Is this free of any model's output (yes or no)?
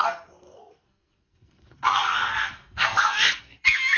no